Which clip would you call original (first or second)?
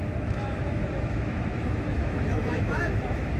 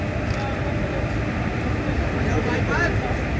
second